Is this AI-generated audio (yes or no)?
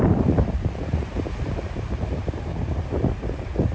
yes